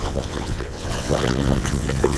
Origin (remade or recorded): remade